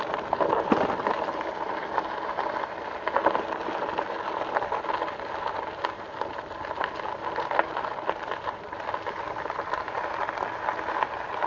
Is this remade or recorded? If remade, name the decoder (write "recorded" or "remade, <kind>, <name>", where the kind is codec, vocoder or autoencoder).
recorded